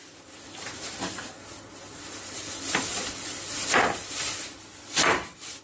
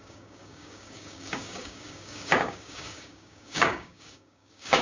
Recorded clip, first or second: first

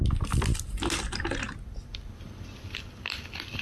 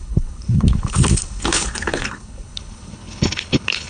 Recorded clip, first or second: first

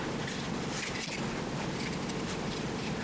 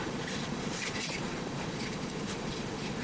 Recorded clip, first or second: first